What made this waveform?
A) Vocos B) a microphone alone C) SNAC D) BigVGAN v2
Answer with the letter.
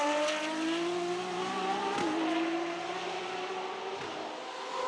B